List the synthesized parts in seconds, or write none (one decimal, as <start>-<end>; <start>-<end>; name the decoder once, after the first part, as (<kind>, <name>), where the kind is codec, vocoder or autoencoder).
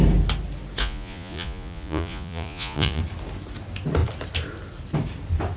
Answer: 0.8-3.0 (vocoder, Vocos)